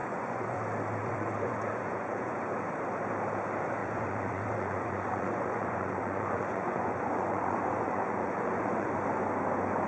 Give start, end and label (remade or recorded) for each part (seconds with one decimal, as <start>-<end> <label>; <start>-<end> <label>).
0.0-0.6 remade; 0.6-1.0 recorded; 1.0-2.4 remade; 2.4-3.8 recorded; 3.8-8.9 remade; 8.9-9.9 recorded